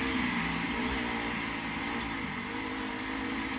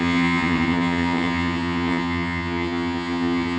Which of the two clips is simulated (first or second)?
second